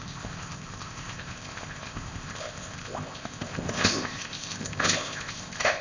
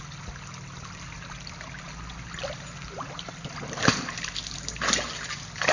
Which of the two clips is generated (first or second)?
first